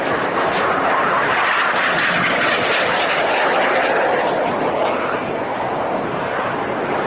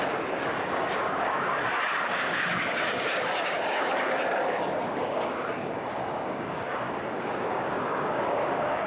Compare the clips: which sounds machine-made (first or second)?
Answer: second